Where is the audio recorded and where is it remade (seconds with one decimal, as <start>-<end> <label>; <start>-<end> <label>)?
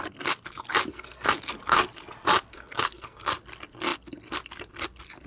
0.0-0.9 recorded; 0.9-1.5 remade; 1.5-2.5 recorded; 2.5-3.2 remade; 3.2-5.3 recorded